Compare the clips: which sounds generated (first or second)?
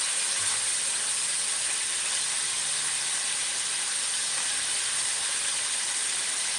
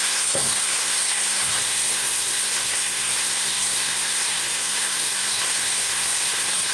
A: second